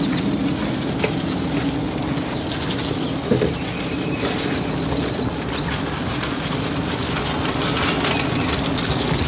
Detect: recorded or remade recorded